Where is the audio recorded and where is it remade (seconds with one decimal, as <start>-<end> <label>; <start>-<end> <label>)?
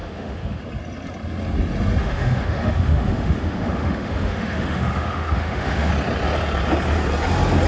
0.0-0.6 remade; 0.6-2.0 recorded; 2.0-5.9 remade; 5.9-7.7 recorded